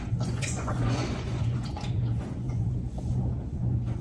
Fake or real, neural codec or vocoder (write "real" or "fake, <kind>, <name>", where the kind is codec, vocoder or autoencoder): fake, vocoder, Vocos